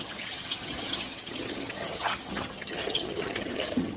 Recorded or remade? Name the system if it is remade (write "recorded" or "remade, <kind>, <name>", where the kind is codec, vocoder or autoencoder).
remade, vocoder, HiFi-GAN